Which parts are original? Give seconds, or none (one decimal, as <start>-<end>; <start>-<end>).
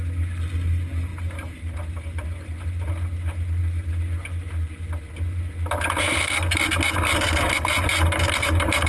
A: 0.0-8.9